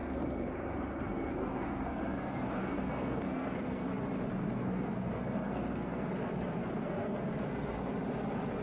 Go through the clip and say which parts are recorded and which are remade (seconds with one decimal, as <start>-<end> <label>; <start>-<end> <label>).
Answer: 0.0-3.9 remade; 3.9-4.4 recorded; 4.4-6.1 remade; 6.1-6.6 recorded; 6.6-7.3 remade; 7.3-8.6 recorded